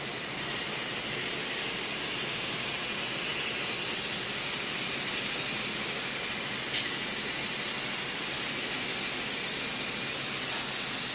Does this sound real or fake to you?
real